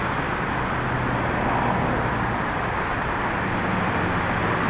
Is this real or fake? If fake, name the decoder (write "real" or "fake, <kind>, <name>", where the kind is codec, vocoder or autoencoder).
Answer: real